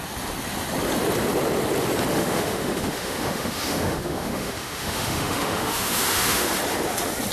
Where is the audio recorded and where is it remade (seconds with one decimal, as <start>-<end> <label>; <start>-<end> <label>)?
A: 0.0-2.1 recorded; 2.1-6.5 remade; 6.5-7.3 recorded